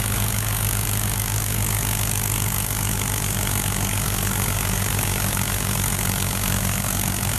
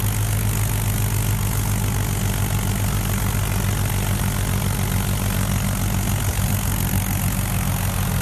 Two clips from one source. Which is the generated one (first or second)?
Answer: first